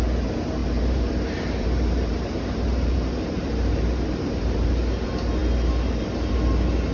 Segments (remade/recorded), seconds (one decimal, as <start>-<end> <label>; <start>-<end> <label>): 0.0-0.6 recorded; 0.6-4.7 remade; 4.7-6.9 recorded